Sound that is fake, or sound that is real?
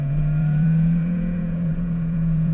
fake